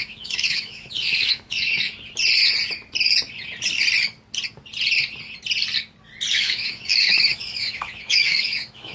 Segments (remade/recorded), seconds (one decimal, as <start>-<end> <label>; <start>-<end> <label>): 0.0-1.9 remade; 1.9-6.3 recorded; 6.3-8.9 remade